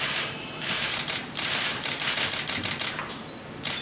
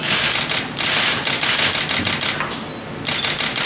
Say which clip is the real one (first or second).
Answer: second